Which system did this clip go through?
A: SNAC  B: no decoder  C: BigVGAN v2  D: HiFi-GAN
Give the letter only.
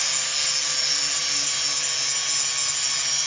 B